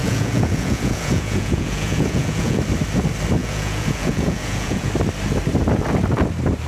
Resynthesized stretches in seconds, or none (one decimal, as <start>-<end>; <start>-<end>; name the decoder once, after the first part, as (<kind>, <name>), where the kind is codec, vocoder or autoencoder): 0.0-2.6 (vocoder, Vocos); 3.4-4.9